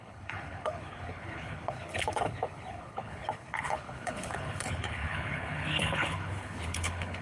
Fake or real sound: fake